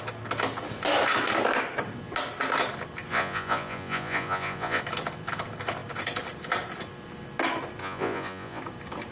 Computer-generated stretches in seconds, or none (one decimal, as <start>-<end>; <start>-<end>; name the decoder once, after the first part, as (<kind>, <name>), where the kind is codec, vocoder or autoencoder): 3.1-4.8 (vocoder, Vocos); 7.8-8.6